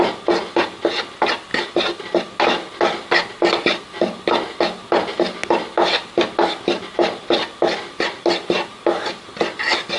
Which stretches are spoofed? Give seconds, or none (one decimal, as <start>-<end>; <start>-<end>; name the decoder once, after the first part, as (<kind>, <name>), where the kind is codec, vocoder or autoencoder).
none